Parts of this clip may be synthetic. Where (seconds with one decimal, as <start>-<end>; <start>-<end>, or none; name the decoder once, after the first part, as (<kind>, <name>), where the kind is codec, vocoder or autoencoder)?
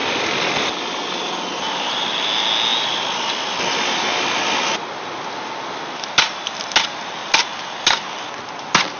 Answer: none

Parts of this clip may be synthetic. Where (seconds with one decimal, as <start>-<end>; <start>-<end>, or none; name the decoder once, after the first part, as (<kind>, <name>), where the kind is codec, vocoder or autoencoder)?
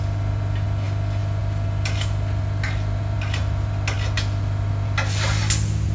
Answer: none